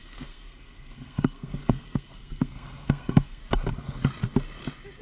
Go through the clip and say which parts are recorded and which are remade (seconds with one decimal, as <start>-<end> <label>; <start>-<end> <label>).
0.0-3.4 remade; 3.4-5.0 recorded

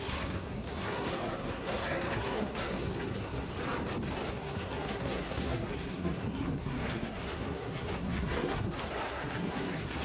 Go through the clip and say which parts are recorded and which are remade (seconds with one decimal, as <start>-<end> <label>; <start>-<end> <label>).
0.0-3.5 remade; 3.5-4.3 recorded; 4.3-10.0 remade

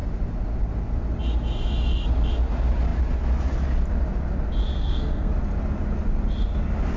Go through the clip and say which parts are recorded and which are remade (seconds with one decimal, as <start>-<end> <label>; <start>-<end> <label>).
0.0-4.7 recorded; 4.7-5.3 remade; 5.3-7.0 recorded

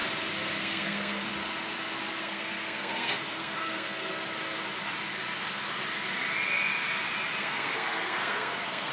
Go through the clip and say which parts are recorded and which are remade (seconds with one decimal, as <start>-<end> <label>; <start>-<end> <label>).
0.0-0.6 recorded; 0.6-1.3 remade; 1.3-2.2 recorded; 2.2-4.1 remade; 4.1-7.4 recorded; 7.4-8.9 remade

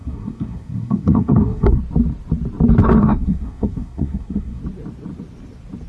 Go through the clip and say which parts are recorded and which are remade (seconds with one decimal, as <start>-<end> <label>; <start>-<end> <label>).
0.0-1.8 remade; 1.8-3.0 recorded; 3.0-4.6 remade; 4.6-5.9 recorded

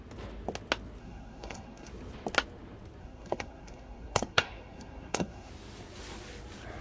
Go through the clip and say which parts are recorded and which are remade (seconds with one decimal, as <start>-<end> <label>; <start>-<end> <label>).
0.0-1.0 recorded; 1.0-1.9 remade; 1.9-3.0 recorded; 3.0-5.5 remade; 5.5-6.8 recorded

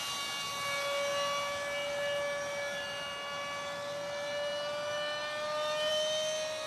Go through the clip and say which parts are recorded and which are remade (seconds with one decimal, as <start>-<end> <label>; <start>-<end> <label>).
0.0-6.7 recorded

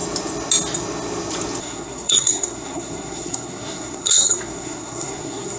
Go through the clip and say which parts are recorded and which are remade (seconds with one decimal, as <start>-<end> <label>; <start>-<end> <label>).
0.0-1.6 recorded; 1.6-5.6 remade